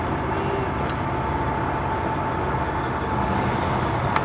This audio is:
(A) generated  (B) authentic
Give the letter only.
B